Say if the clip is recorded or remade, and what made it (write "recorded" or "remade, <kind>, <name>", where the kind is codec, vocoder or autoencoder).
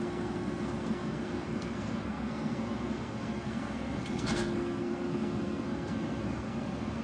remade, codec, SNAC